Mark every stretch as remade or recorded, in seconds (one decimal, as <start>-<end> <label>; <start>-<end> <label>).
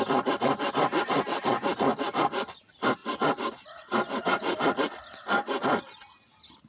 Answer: 0.0-1.9 recorded; 1.9-2.6 remade; 2.6-6.7 recorded